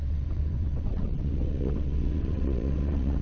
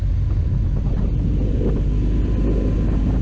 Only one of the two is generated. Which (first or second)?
first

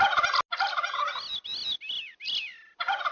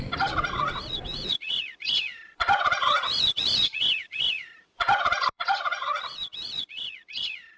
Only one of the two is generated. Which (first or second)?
second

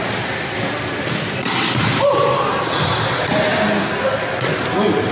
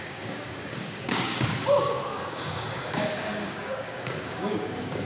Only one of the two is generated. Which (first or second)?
second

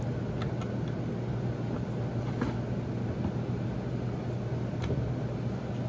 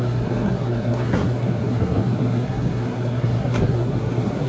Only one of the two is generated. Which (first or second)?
second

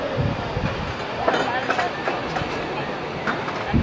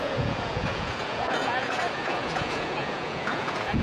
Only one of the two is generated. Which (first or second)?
second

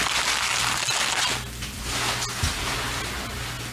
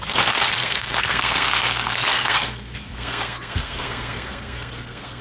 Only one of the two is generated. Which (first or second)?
second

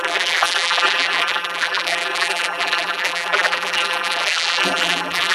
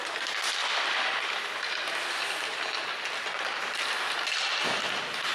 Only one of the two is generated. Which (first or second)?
first